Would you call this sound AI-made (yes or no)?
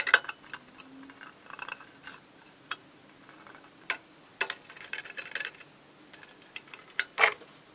no